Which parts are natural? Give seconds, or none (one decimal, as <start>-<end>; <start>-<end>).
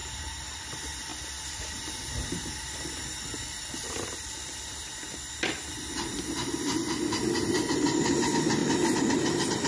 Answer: 0.0-9.7